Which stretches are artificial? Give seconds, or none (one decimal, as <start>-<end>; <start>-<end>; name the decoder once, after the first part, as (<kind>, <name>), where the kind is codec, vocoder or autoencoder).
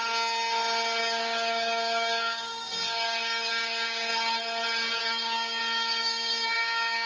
1.0-4.1 (codec, DAC); 5.0-5.6; 6.0-7.1